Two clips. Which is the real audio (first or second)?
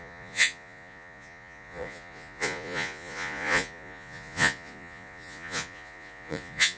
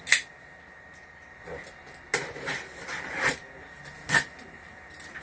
second